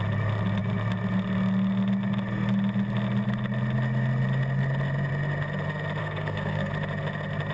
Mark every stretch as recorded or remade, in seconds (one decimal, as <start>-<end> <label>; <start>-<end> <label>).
0.0-6.0 recorded; 6.0-6.7 remade; 6.7-7.5 recorded